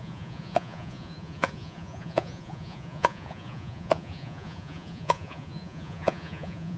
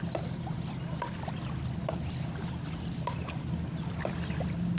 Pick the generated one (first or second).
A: first